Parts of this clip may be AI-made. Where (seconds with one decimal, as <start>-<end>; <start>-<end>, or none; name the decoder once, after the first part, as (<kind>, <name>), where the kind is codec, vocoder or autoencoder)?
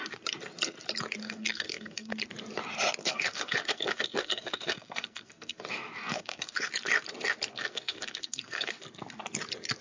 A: 1.2-2.1 (codec, SNAC); 3.0-5.6; 6.0-6.7; 7.5-8.8